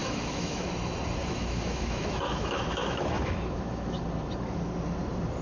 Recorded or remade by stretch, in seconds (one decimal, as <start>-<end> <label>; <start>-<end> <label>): 0.0-0.7 remade; 0.7-1.2 recorded; 1.2-4.0 remade; 4.0-5.4 recorded